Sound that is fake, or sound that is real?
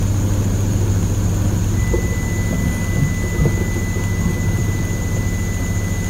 real